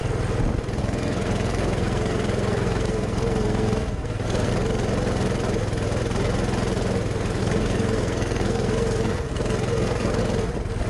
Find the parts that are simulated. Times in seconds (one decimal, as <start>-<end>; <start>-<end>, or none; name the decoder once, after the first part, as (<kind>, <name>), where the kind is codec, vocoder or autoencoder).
0.8-4.5 (codec, SNAC); 7.4-10.2